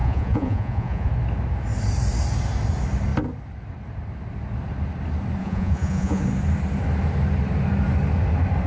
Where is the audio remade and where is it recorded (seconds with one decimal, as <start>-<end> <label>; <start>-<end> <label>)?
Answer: 0.0-1.1 remade; 1.1-5.4 recorded; 5.4-6.2 remade; 6.2-8.7 recorded